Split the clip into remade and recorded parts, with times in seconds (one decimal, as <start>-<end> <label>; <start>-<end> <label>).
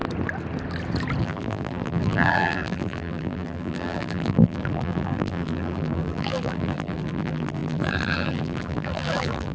0.0-1.2 recorded; 1.2-9.5 remade